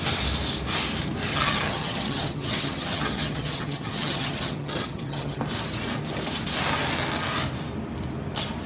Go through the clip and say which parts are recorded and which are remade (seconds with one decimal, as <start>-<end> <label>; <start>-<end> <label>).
0.0-1.3 recorded; 1.3-5.4 remade; 5.4-8.7 recorded

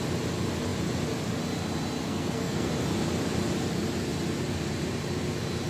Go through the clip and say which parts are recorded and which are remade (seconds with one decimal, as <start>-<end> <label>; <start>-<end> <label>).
0.0-2.0 recorded; 2.0-2.7 remade; 2.7-5.7 recorded

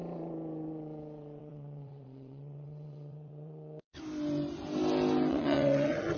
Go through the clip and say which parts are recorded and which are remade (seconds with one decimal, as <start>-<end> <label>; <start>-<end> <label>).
0.0-1.4 recorded; 1.4-4.0 remade; 4.0-5.3 recorded; 5.3-6.2 remade

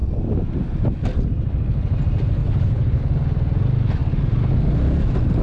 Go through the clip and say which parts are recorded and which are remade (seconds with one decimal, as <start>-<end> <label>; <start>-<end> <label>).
0.0-2.4 recorded; 2.4-3.0 remade; 3.0-5.4 recorded

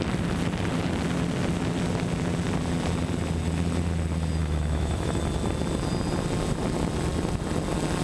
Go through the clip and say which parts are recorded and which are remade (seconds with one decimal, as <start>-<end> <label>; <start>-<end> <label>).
0.0-4.4 recorded; 4.4-5.2 remade; 5.2-8.0 recorded

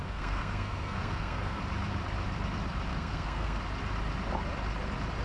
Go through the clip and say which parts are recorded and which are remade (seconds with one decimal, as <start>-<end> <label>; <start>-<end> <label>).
0.0-1.6 remade; 1.6-2.9 recorded; 2.9-3.6 remade; 3.6-5.2 recorded

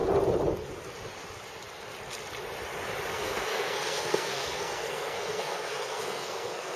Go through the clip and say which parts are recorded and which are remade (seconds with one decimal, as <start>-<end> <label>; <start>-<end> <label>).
0.0-3.1 recorded; 3.1-6.8 remade